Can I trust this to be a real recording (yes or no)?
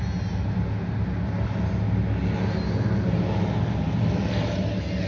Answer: yes